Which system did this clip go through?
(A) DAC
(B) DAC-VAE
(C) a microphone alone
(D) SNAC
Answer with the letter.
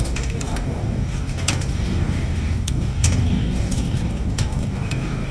A